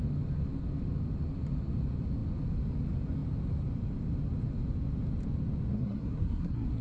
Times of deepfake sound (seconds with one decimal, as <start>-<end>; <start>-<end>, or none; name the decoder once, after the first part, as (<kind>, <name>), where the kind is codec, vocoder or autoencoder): 5.7-6.8 (codec, SNAC)